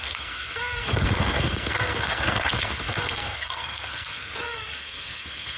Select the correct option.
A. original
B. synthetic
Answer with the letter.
B